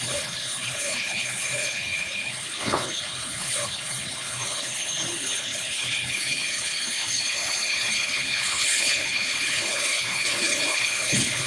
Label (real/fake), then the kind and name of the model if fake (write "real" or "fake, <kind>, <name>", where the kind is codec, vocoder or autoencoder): fake, codec, HILCodec